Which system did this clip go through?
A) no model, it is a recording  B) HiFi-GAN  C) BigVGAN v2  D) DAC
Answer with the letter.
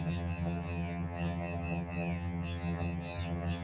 B